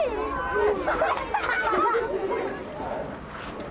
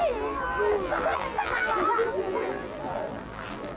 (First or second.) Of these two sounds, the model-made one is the second